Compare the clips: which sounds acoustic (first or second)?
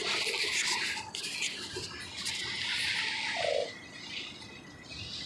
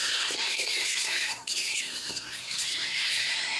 first